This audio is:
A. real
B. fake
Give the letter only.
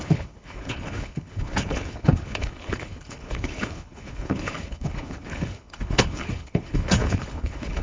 B